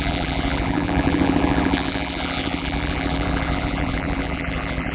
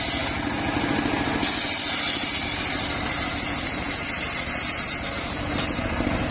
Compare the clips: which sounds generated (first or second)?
first